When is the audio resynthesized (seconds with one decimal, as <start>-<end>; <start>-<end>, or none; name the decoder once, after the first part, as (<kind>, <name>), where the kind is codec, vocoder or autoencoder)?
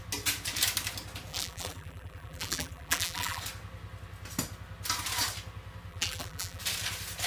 1.3-3.4 (vocoder, BigVGAN v2); 5.9-6.6